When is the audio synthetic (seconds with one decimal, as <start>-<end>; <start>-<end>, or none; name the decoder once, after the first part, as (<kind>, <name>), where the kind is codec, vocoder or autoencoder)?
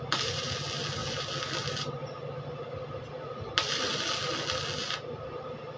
none